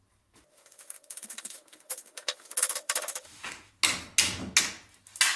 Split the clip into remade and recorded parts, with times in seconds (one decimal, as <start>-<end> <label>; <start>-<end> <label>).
0.0-0.5 recorded; 0.5-3.7 remade; 3.7-5.4 recorded